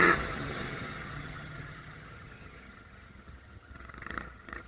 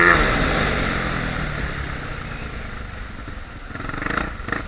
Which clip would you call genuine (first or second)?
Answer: second